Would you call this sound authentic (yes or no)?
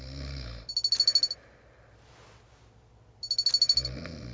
yes